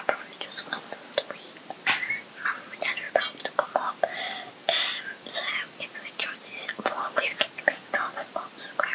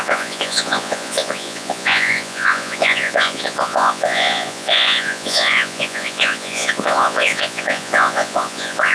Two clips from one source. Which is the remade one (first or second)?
second